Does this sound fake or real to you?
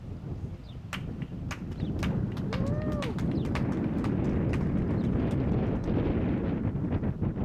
real